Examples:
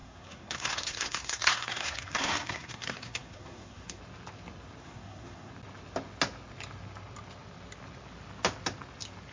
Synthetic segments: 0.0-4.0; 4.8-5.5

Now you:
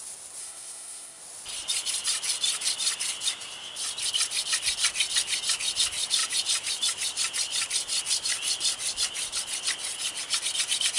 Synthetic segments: 0.4-1.2

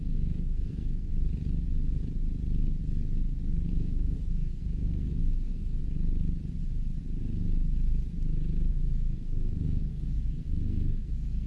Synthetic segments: 0.0-1.1; 3.7-5.8; 8.7-11.5

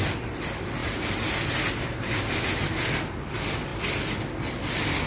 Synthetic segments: none

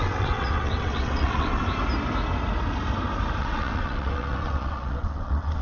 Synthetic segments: 0.0-1.6; 3.4-5.6

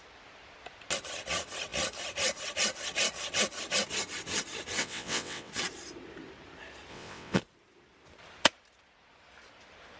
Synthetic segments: 4.8-5.5; 6.9-7.4